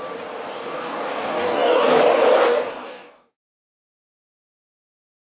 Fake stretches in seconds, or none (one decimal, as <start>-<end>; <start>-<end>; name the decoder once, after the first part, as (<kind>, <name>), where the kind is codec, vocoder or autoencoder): 0.5-1.9 (codec, DAC); 2.5-4.4